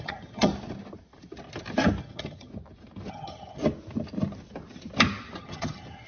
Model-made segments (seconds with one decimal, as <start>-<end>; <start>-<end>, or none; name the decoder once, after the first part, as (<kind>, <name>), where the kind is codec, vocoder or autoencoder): 0.0-0.5 (vocoder, HiFi-GAN); 2.0-2.5; 3.1-3.6; 5.4-6.1